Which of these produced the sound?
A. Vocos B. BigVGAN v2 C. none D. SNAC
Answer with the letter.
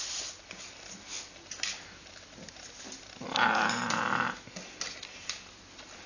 C